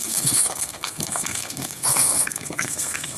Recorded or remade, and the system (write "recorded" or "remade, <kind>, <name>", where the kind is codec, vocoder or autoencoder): remade, codec, SNAC